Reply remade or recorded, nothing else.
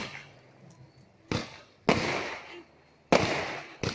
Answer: recorded